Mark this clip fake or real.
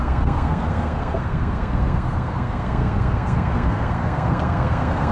fake